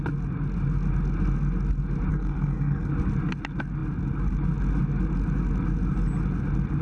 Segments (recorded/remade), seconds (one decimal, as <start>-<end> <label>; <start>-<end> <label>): 0.0-2.1 recorded; 2.1-2.9 remade; 2.9-6.8 recorded